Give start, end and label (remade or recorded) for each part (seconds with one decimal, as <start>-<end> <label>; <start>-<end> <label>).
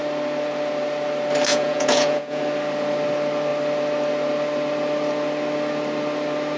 0.0-1.5 recorded; 1.5-2.4 remade; 2.4-6.6 recorded